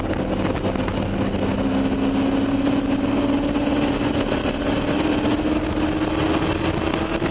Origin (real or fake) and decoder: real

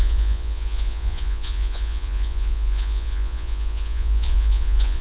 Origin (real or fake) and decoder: fake, vocoder, Vocos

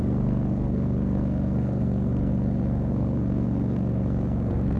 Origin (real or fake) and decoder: fake, codec, SNAC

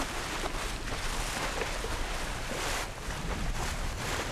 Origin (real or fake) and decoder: real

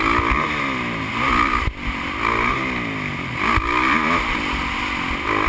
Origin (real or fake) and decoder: real